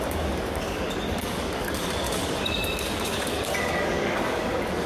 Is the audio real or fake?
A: fake